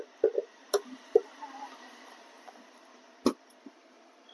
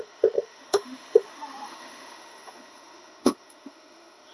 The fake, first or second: second